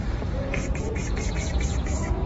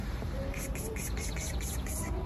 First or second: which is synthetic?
first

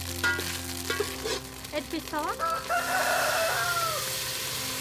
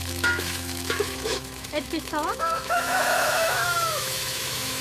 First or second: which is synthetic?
second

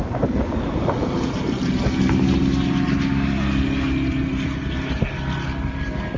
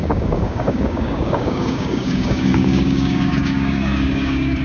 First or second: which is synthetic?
second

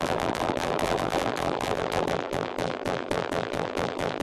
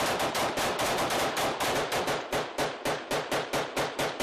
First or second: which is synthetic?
first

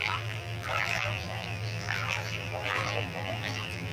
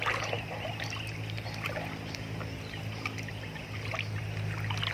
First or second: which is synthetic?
first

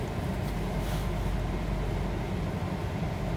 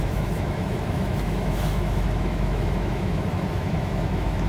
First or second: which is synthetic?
second